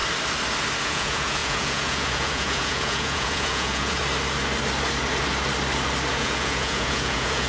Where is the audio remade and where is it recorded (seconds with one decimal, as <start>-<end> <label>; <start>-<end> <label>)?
0.0-0.8 recorded; 0.8-4.0 remade; 4.0-6.1 recorded; 6.1-7.5 remade